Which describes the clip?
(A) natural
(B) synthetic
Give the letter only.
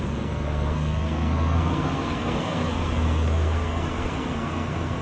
B